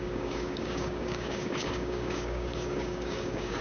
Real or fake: fake